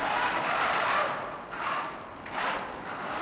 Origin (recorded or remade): recorded